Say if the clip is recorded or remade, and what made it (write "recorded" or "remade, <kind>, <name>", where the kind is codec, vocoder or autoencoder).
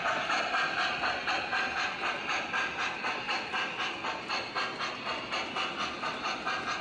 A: recorded